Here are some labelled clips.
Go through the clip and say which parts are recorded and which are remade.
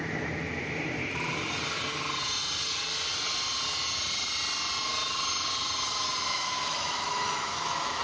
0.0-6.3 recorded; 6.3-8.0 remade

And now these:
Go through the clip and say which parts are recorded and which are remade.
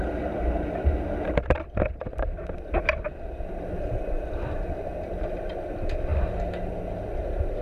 0.0-7.6 recorded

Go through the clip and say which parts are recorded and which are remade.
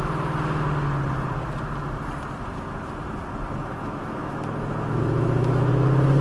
0.0-3.6 recorded; 3.6-5.7 remade; 5.7-6.2 recorded